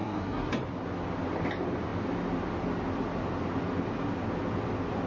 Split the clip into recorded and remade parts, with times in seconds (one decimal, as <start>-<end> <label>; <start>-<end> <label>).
0.0-0.5 remade; 0.5-5.1 recorded